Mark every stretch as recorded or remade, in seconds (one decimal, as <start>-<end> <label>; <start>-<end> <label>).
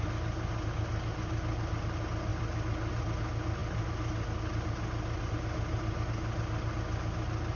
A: 0.0-7.6 recorded